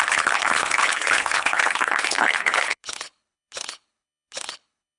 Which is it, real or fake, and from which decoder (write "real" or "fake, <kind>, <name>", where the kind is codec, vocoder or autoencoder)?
fake, codec, HILCodec